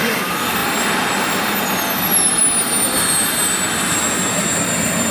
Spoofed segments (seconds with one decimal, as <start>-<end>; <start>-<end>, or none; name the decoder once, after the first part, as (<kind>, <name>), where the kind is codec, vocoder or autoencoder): none